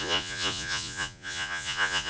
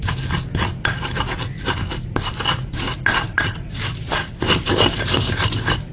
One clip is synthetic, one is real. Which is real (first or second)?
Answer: second